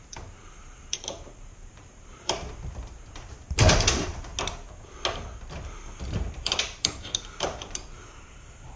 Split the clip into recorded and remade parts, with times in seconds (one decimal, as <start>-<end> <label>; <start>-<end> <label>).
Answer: 0.0-4.3 remade; 4.3-6.0 recorded; 6.0-8.8 remade

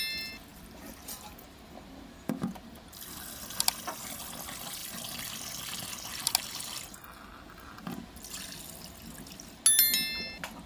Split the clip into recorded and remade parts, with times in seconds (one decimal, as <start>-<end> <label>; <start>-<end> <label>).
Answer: 0.0-0.5 recorded; 0.5-2.8 remade; 2.8-4.8 recorded; 4.8-5.3 remade; 5.3-10.7 recorded

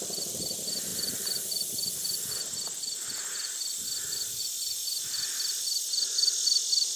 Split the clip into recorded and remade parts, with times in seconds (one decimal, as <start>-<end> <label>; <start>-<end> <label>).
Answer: 0.0-0.9 recorded; 0.9-4.4 remade; 4.4-7.0 recorded

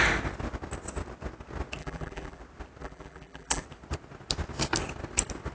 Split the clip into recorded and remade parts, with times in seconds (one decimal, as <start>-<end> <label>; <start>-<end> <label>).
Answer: 0.0-1.8 recorded; 1.8-2.4 remade; 2.4-2.8 recorded; 2.8-3.6 remade; 3.6-5.5 recorded

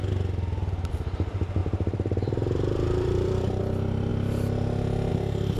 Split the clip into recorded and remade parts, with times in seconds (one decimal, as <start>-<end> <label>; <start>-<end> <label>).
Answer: 0.0-1.6 recorded; 1.6-3.6 remade; 3.6-5.6 recorded